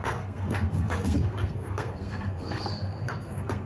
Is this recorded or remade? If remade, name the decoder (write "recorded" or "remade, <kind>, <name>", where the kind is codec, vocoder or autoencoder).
remade, codec, SNAC